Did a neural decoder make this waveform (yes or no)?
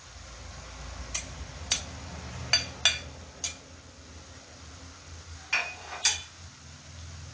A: no